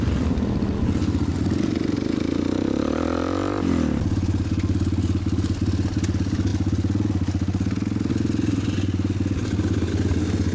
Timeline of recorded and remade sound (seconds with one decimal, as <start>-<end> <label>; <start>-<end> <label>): 0.0-10.5 recorded